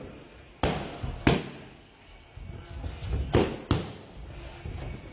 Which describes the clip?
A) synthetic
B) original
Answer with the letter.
B